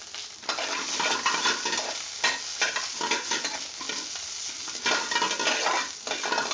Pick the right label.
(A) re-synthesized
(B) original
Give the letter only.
B